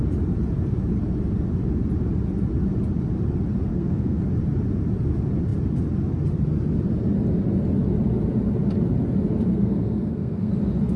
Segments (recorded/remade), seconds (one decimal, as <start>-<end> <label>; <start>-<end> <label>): 0.0-3.7 recorded; 3.7-4.2 remade; 4.2-9.5 recorded; 9.5-10.5 remade; 10.5-11.0 recorded